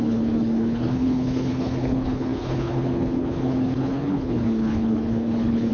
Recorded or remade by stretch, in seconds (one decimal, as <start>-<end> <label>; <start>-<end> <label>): 0.0-5.7 remade